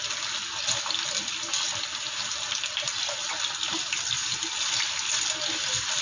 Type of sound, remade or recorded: recorded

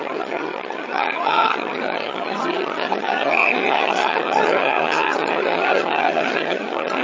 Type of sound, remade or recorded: remade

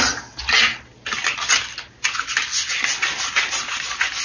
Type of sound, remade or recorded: recorded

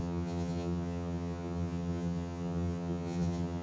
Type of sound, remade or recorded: remade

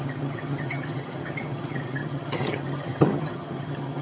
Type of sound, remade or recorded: remade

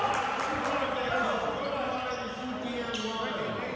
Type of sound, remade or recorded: recorded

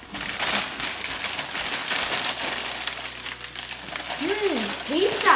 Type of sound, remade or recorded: recorded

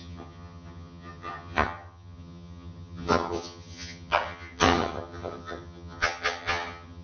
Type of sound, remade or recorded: remade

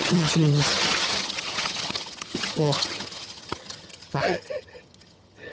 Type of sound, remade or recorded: remade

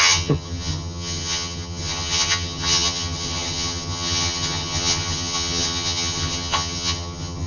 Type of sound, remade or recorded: remade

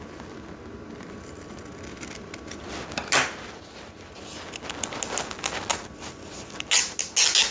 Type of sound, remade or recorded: recorded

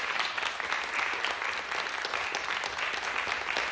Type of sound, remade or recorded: recorded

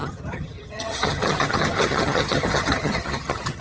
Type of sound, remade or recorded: remade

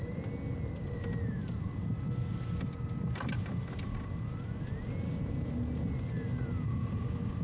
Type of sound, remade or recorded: recorded